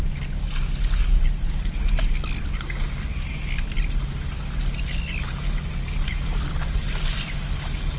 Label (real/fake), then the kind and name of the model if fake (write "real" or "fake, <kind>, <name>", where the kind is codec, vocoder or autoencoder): real